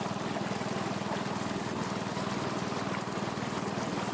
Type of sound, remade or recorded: recorded